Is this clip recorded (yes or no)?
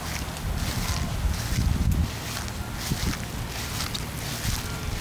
yes